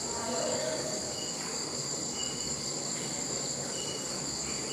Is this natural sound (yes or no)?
no